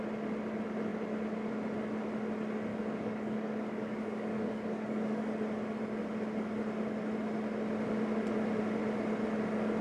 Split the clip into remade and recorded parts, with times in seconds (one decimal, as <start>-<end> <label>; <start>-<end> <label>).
0.0-2.7 recorded; 2.7-5.3 remade; 5.3-9.8 recorded